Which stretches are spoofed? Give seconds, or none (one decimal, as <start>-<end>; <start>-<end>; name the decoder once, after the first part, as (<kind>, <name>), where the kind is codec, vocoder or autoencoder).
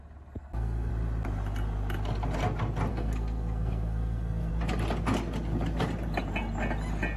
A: 0.4-0.9 (codec, SNAC); 2.9-4.5